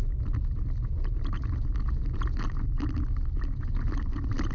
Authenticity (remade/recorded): recorded